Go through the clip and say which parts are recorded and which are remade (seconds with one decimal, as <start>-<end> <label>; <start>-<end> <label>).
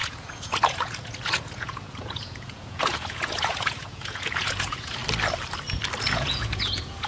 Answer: 0.0-5.0 remade; 5.0-6.0 recorded; 6.0-7.1 remade